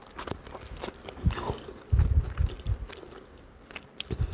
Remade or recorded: recorded